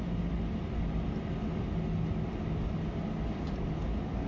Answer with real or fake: real